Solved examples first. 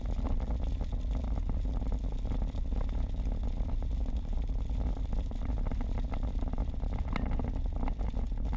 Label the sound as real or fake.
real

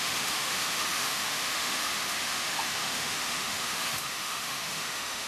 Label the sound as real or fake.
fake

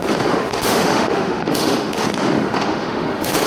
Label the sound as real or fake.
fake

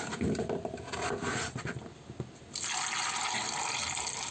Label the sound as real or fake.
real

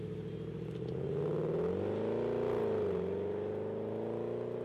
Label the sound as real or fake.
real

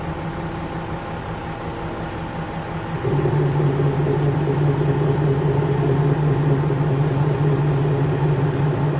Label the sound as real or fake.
real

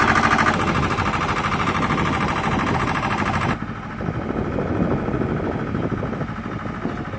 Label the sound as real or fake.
real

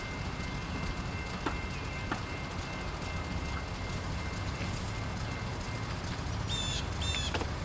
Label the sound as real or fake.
real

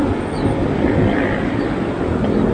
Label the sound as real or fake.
real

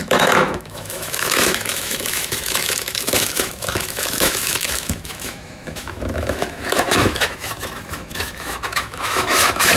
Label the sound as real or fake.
fake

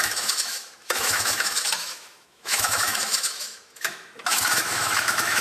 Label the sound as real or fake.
fake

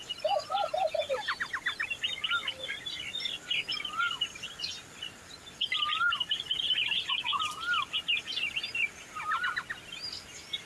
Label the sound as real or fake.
real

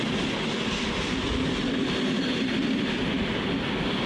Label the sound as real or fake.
real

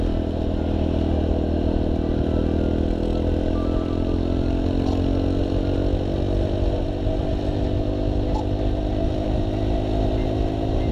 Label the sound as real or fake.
real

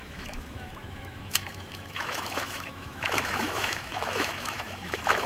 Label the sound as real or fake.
fake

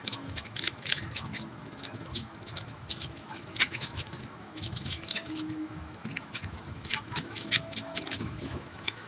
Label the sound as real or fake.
fake